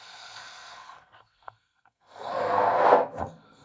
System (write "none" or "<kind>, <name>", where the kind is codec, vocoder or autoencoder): codec, SNAC